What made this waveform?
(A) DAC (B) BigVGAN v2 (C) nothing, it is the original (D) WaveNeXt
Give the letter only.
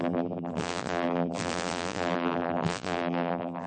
B